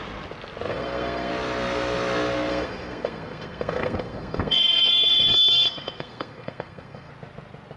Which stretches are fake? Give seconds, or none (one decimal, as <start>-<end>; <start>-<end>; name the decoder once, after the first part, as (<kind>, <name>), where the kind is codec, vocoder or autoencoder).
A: 0.7-1.3 (codec, SNAC); 2.5-7.1